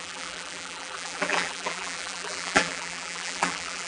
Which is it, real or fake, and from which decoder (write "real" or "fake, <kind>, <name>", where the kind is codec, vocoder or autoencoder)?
fake, vocoder, BigVGAN v2